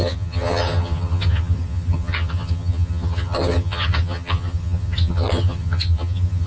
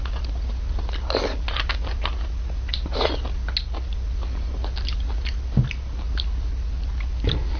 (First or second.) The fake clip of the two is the first